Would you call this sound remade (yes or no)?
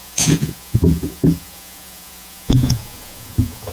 yes